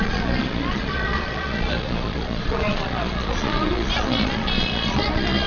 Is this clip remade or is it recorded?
remade